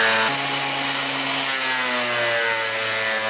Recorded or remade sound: recorded